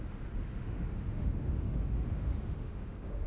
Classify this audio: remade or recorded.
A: remade